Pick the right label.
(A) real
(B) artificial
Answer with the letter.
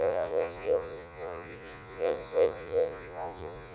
B